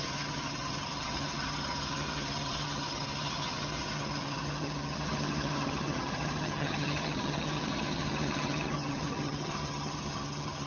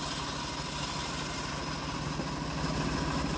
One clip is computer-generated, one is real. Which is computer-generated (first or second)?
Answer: first